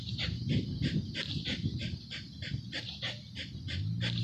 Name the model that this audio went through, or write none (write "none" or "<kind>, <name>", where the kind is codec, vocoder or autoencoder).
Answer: none